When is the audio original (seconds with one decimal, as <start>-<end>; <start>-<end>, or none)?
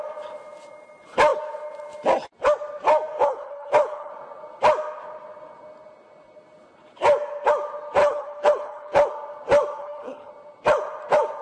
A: 0.0-3.3; 4.1-8.0; 9.1-9.8; 10.3-11.4